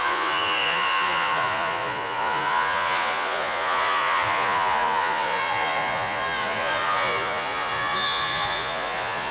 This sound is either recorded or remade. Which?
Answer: remade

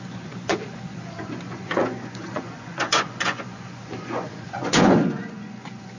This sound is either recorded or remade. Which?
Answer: remade